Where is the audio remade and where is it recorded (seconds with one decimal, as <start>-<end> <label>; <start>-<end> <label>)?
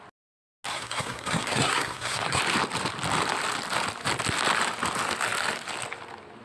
0.0-0.7 recorded; 0.7-2.4 remade; 2.4-6.4 recorded